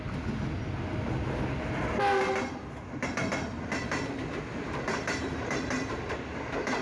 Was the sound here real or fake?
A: real